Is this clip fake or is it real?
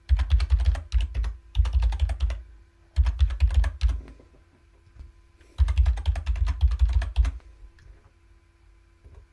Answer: real